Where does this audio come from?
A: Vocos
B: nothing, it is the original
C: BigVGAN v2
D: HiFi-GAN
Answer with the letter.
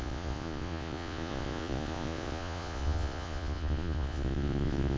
A